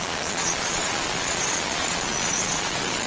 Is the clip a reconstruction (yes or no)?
yes